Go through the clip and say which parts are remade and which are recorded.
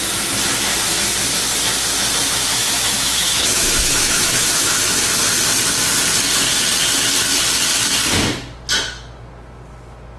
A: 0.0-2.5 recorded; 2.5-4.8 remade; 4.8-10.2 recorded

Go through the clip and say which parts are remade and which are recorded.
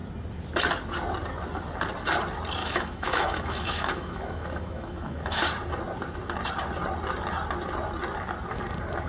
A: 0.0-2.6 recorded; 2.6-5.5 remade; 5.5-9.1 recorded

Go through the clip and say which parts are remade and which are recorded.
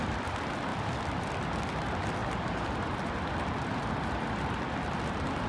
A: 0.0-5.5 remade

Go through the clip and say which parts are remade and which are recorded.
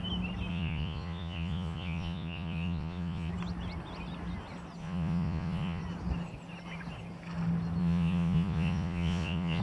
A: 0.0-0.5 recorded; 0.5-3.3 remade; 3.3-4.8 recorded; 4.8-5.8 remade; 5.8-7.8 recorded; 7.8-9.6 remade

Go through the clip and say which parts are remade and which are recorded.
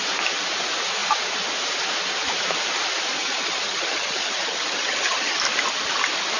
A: 0.0-3.2 recorded; 3.2-5.4 remade; 5.4-6.4 recorded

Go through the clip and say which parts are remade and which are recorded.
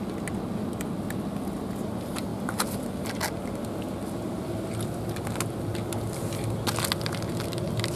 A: 0.0-8.0 recorded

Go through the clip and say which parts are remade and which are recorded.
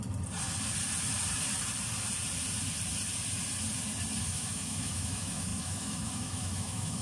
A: 0.0-4.2 recorded; 4.2-7.0 remade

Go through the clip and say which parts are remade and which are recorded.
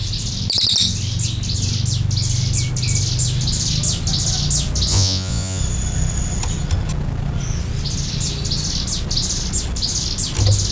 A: 0.0-4.9 recorded; 4.9-5.6 remade; 5.6-10.7 recorded